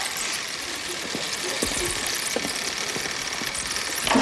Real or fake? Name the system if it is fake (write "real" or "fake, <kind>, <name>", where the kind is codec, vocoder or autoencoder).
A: real